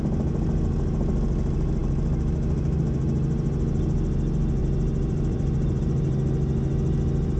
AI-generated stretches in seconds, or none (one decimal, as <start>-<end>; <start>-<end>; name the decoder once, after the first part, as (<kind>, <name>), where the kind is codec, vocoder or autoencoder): 4.6-5.8 (vocoder, BigVGAN v2)